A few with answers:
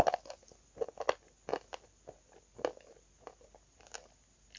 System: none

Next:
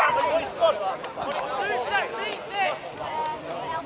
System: none